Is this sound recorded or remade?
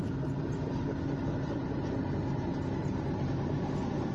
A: recorded